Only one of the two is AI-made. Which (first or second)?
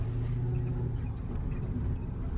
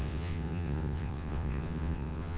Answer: second